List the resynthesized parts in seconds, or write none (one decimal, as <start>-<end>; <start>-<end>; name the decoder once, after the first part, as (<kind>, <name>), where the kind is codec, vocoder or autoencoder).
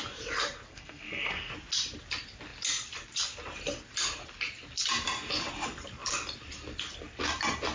0.7-1.5 (codec, SNAC)